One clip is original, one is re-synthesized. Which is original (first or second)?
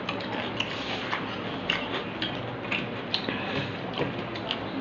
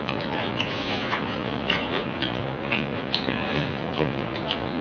first